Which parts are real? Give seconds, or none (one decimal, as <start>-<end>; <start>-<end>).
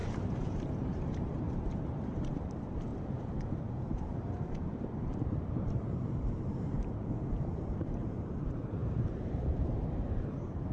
none